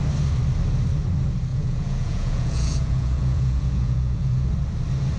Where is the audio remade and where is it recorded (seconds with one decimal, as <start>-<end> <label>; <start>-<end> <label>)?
0.0-1.5 recorded; 1.5-4.5 remade; 4.5-5.2 recorded